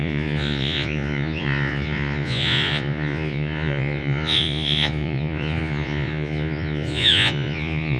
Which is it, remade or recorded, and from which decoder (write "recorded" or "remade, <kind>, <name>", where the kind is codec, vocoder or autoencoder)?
remade, vocoder, Vocos